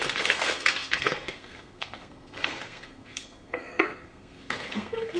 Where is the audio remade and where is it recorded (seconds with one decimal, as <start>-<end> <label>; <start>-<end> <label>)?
0.0-5.2 remade